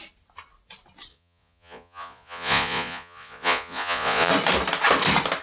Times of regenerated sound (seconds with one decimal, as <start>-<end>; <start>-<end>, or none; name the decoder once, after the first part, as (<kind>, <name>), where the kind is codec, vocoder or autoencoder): 1.1-4.3 (vocoder, Vocos)